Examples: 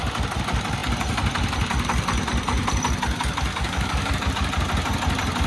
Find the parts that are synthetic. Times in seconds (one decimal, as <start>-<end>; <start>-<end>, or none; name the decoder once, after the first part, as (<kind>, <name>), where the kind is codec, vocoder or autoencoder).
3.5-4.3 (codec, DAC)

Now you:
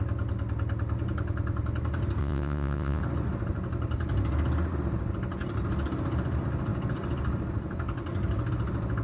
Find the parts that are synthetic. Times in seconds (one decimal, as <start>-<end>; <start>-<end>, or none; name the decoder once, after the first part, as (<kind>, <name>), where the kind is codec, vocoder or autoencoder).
2.2-3.0 (vocoder, Vocos)

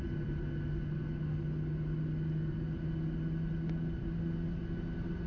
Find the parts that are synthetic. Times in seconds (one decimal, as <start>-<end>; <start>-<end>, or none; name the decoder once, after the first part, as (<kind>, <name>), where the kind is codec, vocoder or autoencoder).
none

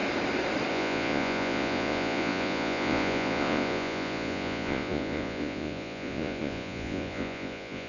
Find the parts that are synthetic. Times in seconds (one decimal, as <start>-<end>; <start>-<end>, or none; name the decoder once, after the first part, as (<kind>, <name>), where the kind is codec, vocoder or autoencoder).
0.7-7.9 (vocoder, Vocos)